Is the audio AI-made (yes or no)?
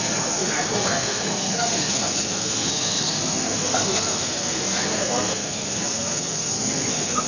yes